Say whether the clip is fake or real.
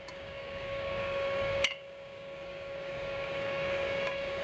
fake